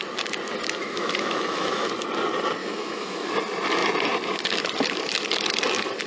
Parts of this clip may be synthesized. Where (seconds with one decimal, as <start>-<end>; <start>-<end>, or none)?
0.8-1.9; 2.6-3.3